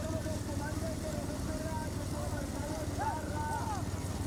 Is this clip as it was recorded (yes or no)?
yes